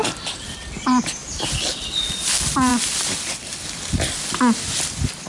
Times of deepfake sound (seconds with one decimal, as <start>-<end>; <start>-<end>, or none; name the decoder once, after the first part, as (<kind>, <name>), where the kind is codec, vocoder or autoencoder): none